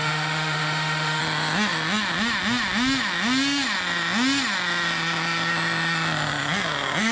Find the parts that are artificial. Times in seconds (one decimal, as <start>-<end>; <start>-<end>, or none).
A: 0.0-1.2